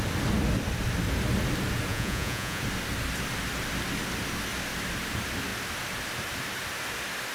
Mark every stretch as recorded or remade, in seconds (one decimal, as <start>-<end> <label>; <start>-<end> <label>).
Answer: 0.0-1.9 recorded; 1.9-2.6 remade; 2.6-7.3 recorded